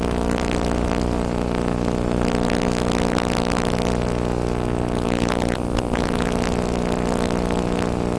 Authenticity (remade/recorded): recorded